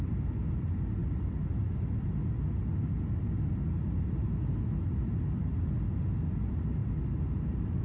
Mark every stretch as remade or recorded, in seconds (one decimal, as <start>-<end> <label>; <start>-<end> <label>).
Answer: 0.0-7.8 recorded